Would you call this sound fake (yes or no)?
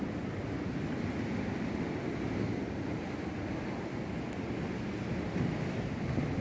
no